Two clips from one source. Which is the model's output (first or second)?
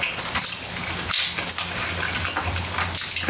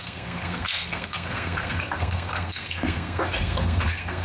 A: second